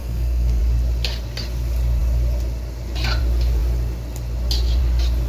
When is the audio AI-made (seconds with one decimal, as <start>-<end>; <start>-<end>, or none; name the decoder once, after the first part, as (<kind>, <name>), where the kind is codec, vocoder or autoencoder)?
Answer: 0.0-0.6 (codec, SNAC)